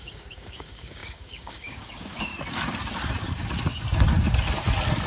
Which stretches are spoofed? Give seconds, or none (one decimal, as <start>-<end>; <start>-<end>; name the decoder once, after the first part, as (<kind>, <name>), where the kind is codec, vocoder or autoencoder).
0.0-2.3 (codec, DAC)